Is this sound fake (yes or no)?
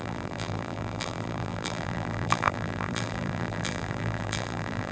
yes